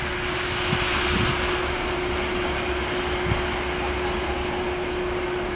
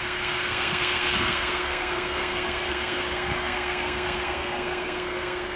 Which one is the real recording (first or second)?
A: first